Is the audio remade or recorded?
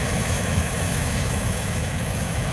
remade